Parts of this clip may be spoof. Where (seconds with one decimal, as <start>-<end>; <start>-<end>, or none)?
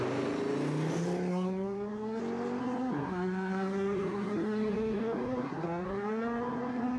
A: 1.3-2.2; 2.6-7.0